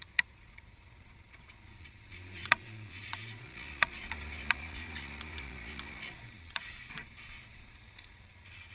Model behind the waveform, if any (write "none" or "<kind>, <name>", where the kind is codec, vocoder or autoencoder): vocoder, Vocos